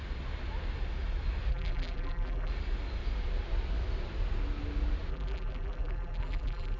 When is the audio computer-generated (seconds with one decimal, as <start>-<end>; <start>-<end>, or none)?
1.5-2.5; 5.1-6.8